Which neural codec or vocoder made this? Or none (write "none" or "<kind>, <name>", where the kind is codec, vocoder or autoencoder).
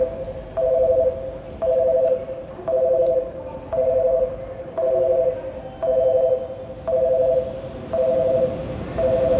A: none